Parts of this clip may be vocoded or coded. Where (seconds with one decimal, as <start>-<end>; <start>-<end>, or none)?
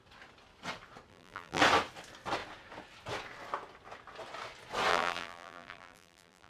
1.1-1.6; 4.9-6.5